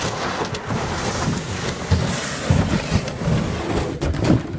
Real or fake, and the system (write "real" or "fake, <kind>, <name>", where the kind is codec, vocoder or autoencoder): real